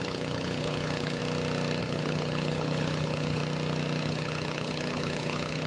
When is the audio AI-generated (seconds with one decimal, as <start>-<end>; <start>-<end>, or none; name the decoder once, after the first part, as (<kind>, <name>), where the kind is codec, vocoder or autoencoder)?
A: 0.0-1.2 (codec, HILCodec); 1.8-3.4; 4.0-5.7